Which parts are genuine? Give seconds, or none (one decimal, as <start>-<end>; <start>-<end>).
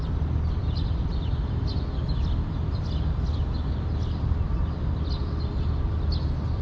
0.0-6.6